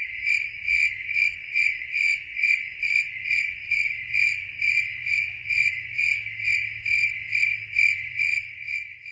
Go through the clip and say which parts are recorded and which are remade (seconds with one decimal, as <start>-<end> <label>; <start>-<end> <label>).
0.0-6.1 remade; 6.1-7.8 recorded; 7.8-9.1 remade